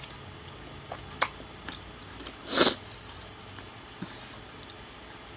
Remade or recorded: recorded